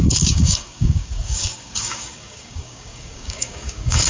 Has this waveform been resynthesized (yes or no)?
yes